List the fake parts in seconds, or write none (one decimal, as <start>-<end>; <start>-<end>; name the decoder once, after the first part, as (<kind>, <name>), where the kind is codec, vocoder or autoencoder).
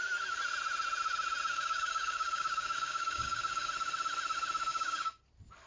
1.5-3.7 (codec, DAC); 4.7-5.2